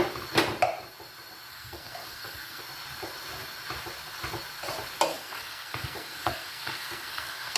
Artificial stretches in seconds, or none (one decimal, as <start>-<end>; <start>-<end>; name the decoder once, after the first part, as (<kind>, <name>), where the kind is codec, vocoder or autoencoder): 1.5-2.6 (codec, SNAC); 5.1-7.6